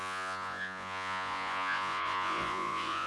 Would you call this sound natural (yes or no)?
no